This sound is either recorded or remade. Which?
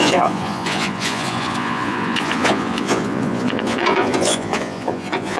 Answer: remade